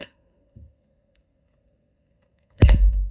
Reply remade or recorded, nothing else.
remade